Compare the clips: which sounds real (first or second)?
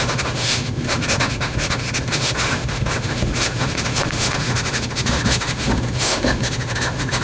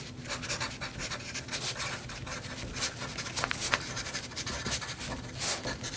second